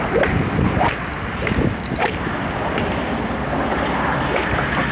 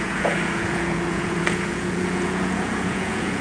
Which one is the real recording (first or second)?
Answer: first